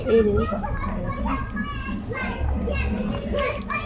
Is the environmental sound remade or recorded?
recorded